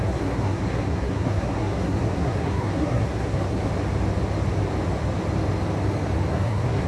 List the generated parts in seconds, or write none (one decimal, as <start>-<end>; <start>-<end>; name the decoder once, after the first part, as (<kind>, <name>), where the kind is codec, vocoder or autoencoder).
0.0-3.7 (codec, SNAC); 6.3-6.9